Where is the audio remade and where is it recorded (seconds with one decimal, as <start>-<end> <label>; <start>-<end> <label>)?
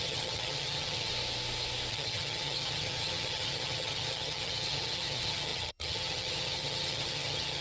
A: 0.0-1.1 remade; 1.1-1.9 recorded; 1.9-7.6 remade